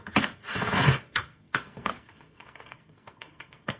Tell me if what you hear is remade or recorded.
remade